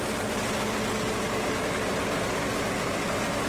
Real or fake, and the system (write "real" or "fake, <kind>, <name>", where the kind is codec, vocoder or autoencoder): real